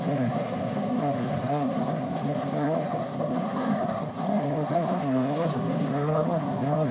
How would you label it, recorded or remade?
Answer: remade